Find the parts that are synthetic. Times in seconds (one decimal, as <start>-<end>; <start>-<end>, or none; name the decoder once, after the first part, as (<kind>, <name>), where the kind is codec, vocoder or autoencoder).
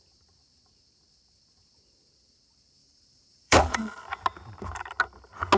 2.8-3.8 (vocoder, BigVGAN v2)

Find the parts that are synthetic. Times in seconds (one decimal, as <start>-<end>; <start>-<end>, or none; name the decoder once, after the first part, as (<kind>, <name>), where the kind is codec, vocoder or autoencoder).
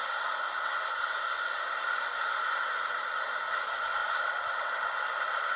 0.0-3.4 (vocoder, BigVGAN v2); 4.0-5.6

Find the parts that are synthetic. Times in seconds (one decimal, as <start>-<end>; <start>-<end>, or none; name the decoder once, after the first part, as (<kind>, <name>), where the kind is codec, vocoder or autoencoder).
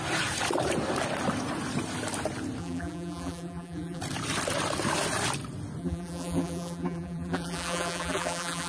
2.6-4.0 (vocoder, BigVGAN v2); 5.8-8.7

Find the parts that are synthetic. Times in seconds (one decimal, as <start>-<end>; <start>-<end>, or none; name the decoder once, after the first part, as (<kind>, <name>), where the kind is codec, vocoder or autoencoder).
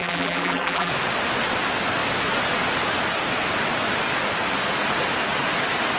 0.0-0.9 (vocoder, BigVGAN v2)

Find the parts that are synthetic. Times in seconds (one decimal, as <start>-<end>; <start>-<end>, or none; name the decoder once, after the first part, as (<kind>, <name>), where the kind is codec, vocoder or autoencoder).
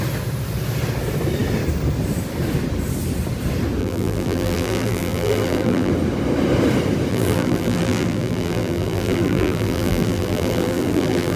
3.8-5.9 (vocoder, BigVGAN v2); 7.1-11.4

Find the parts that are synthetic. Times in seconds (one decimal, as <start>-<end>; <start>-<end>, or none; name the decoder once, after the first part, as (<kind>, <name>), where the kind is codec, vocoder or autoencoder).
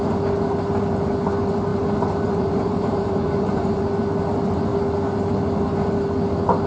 1.7-3.8 (vocoder, BigVGAN v2)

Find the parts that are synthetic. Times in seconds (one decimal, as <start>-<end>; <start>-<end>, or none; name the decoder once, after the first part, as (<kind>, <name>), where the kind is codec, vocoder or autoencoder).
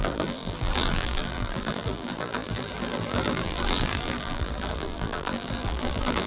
0.0-6.3 (vocoder, BigVGAN v2)